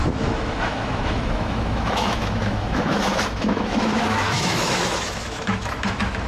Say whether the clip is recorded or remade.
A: remade